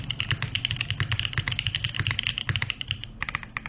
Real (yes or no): yes